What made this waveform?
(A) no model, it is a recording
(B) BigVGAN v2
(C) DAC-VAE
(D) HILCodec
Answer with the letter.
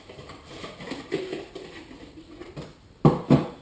B